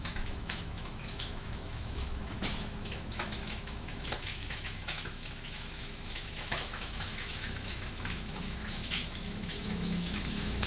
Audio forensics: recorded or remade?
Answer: remade